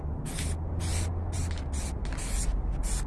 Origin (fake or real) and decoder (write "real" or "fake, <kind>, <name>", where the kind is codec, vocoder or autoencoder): real